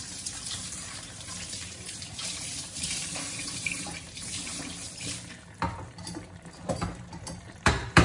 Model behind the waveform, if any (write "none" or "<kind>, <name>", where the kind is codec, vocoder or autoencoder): vocoder, BigVGAN v2